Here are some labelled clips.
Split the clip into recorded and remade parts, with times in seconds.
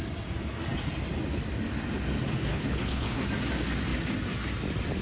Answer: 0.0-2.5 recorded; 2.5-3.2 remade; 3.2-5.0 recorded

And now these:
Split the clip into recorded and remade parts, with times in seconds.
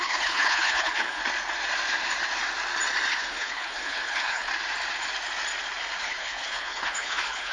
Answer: 0.0-1.2 remade; 1.2-3.1 recorded; 3.1-4.5 remade; 4.5-6.0 recorded; 6.0-7.5 remade